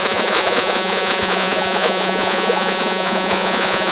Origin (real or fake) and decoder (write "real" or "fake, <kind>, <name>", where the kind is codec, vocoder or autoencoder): fake, vocoder, Vocos